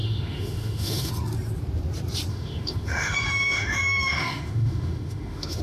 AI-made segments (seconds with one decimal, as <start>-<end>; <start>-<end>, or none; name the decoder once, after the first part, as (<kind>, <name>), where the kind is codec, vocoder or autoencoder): 0.0-1.1 (autoencoder, DAC-VAE); 2.3-5.6